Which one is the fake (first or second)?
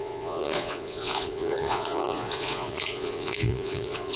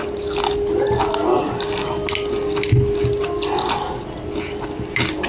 first